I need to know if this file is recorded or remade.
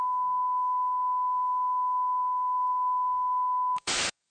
remade